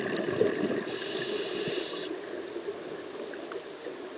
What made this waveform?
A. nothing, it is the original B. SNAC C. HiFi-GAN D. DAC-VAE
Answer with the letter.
A